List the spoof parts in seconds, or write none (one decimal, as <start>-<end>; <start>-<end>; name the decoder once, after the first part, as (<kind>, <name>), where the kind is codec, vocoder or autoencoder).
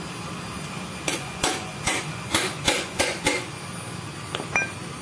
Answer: 1.1-3.5 (vocoder, Vocos)